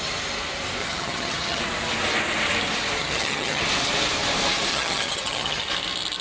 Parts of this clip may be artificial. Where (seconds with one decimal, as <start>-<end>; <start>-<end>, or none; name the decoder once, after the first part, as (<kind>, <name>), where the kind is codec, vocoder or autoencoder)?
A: 0.8-1.6 (vocoder, HiFi-GAN); 3.0-3.6; 4.7-5.7